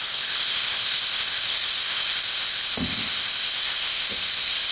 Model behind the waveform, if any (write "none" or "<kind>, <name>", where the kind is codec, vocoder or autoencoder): codec, ZipCodec